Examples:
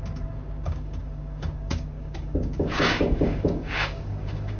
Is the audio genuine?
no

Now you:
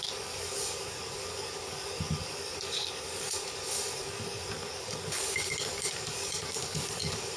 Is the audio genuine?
no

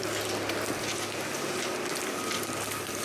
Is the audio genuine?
yes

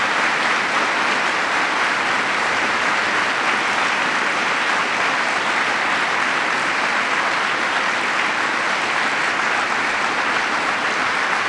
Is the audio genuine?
yes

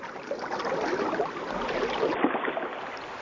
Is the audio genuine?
yes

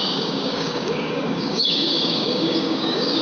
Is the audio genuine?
no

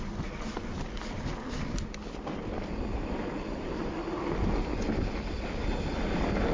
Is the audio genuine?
yes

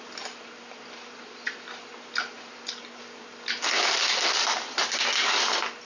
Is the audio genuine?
yes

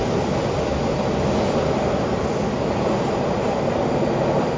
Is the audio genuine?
yes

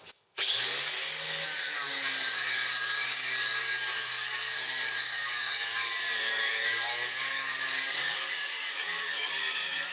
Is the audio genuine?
no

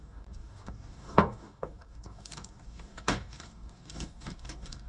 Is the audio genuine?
no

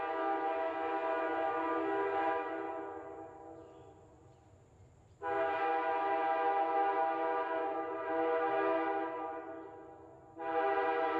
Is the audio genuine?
yes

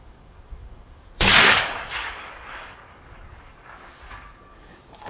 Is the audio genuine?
no